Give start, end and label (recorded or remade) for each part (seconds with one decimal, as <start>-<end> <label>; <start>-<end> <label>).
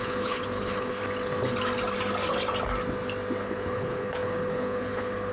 0.0-1.0 remade; 1.0-3.4 recorded; 3.4-5.3 remade